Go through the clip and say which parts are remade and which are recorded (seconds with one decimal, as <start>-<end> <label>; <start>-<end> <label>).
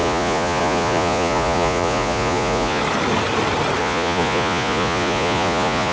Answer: 0.0-2.8 remade; 2.8-3.8 recorded; 3.8-5.9 remade